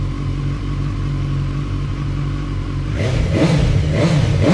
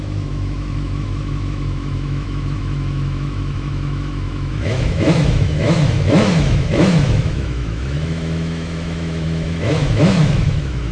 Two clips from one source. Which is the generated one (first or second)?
second